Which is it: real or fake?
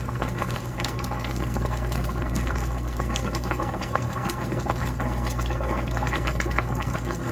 fake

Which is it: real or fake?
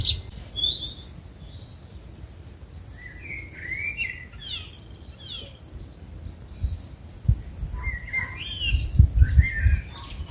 real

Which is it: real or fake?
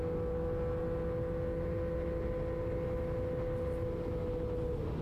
real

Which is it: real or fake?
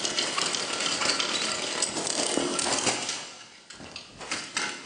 real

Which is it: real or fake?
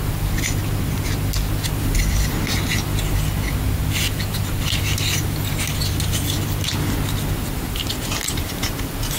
real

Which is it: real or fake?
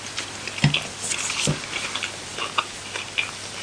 real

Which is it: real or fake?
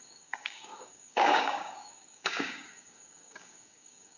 fake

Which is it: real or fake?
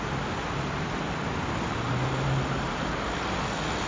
real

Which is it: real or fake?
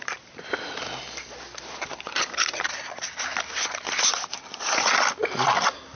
real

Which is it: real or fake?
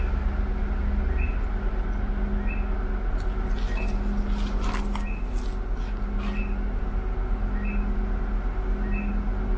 real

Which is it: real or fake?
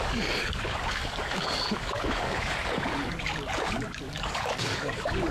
fake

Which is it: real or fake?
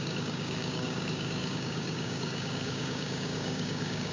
fake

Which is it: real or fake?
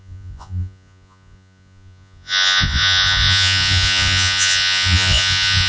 fake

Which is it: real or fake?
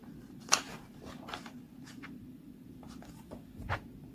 fake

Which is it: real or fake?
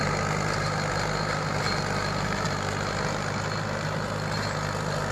real